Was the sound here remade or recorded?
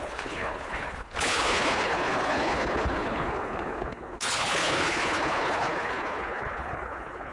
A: remade